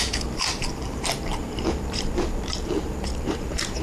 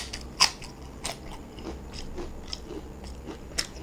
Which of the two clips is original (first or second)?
second